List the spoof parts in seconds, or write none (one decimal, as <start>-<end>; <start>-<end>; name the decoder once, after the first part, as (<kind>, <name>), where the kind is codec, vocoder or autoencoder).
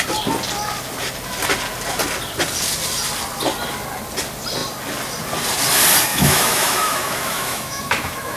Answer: 6.1-8.4 (autoencoder, DAC-VAE)